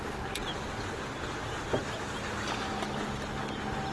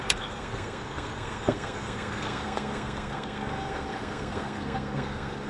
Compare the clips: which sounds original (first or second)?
first